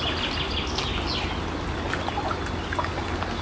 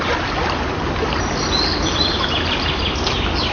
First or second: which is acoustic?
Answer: first